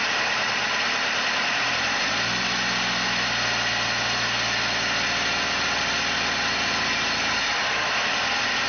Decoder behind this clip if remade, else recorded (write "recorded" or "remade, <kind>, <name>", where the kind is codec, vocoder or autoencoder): recorded